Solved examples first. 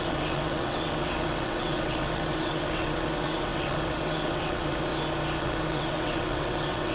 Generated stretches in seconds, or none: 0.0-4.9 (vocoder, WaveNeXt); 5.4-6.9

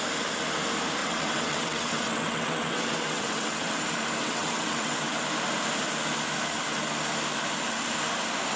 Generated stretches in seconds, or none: 1.0-3.8 (vocoder, WaveNeXt); 4.2-5.2